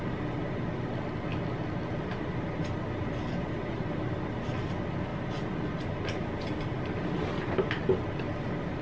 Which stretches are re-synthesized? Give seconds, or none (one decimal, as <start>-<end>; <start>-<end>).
none